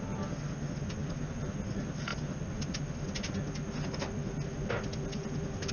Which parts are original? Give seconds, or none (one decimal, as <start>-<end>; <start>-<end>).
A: 0.0-5.7